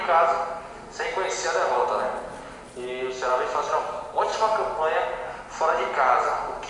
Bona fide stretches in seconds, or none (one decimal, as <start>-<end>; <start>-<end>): 0.0-6.7